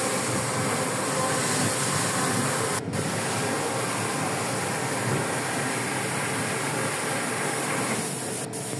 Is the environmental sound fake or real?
real